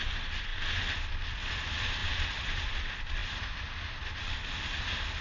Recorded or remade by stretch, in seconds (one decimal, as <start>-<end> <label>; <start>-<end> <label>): 0.0-2.0 recorded; 2.0-2.6 remade; 2.6-5.2 recorded